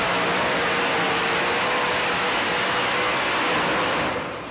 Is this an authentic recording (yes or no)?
yes